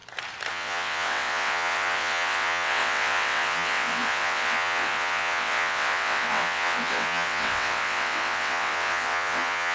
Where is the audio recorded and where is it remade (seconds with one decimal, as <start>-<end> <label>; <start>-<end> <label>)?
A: 0.0-0.5 recorded; 0.5-9.7 remade